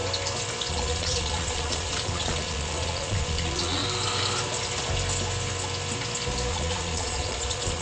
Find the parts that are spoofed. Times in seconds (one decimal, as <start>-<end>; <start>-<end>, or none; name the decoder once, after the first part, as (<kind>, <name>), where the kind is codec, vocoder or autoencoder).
0.7-3.8 (vocoder, Vocos); 6.5-7.8